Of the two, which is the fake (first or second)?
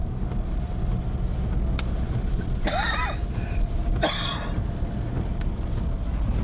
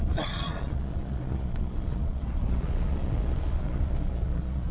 second